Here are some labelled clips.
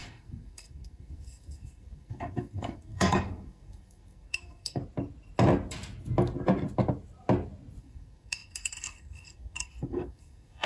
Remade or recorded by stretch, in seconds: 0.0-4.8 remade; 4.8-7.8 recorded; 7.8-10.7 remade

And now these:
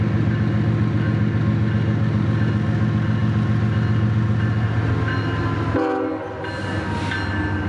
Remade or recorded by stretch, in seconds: 0.0-7.7 recorded

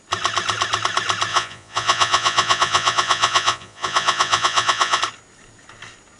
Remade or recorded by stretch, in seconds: 0.0-1.3 recorded; 1.3-5.0 remade; 5.0-6.2 recorded

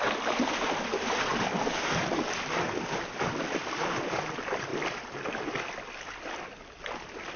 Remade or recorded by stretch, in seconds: 0.0-7.4 recorded

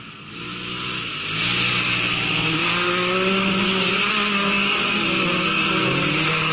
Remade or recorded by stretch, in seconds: 0.0-6.5 recorded

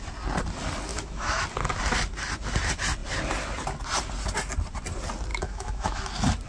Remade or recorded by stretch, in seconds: 0.0-0.9 recorded; 0.9-1.4 remade; 1.4-5.3 recorded; 5.3-6.0 remade; 6.0-6.5 recorded